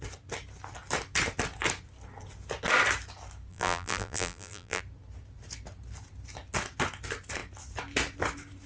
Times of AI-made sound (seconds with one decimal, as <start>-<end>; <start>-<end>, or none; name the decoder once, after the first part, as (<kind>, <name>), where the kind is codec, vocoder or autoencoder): 3.5-4.8 (vocoder, BigVGAN v2)